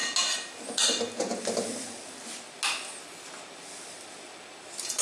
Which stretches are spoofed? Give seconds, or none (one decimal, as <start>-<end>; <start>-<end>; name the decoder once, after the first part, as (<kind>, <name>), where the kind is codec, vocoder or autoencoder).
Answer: none